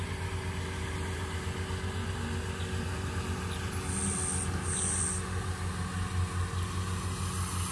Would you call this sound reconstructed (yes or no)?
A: no